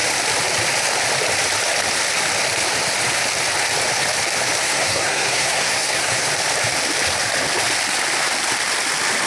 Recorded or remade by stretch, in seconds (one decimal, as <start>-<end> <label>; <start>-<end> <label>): 0.0-4.6 recorded; 4.6-6.3 remade; 6.3-9.3 recorded